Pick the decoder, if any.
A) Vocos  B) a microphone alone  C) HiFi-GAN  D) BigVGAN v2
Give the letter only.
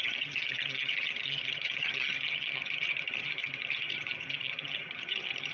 C